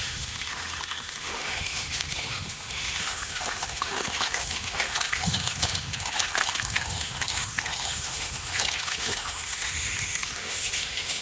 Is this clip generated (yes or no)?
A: yes